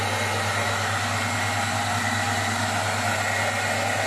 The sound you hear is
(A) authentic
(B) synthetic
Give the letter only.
A